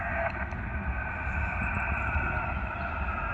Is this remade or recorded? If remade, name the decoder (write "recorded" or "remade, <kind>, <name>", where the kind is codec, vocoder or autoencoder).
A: recorded